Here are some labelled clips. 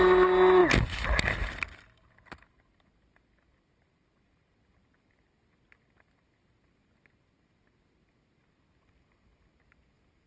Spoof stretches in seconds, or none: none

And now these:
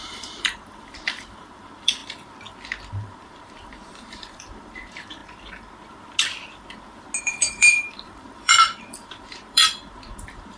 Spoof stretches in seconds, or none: 0.0-2.0 (vocoder, BigVGAN v2); 2.9-5.2; 7.2-10.6

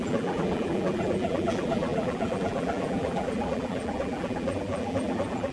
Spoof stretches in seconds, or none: 0.0-5.5 (vocoder, BigVGAN v2)

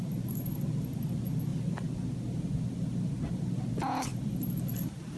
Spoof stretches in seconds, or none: none

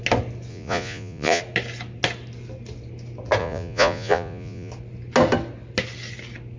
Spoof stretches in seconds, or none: 0.5-1.4 (vocoder, Vocos); 3.4-4.7

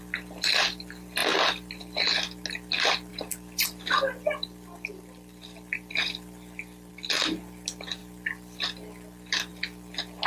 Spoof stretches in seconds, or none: 3.1-6.9 (vocoder, BigVGAN v2)

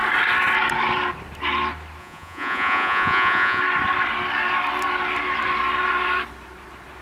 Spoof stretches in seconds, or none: 2.0-3.6 (vocoder, Vocos)

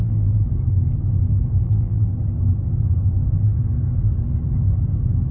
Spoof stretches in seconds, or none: 0.0-0.5 (vocoder, BigVGAN v2); 1.6-2.1